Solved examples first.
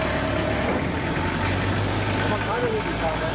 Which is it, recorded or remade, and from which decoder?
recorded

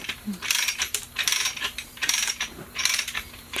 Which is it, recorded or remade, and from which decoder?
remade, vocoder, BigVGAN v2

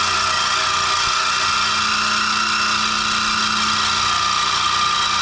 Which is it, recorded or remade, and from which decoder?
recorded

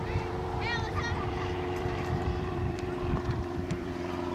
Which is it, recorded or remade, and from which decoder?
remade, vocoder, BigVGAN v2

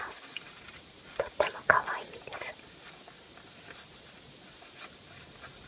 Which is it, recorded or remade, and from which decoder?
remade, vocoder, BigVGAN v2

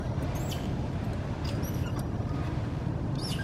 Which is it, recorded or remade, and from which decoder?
recorded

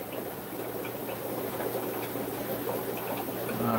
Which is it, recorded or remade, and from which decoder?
recorded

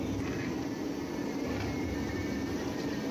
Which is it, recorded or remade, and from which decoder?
recorded